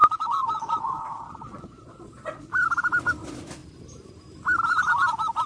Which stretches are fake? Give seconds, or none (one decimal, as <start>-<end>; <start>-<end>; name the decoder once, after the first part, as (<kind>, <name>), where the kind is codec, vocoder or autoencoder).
0.0-2.5 (vocoder, Vocos)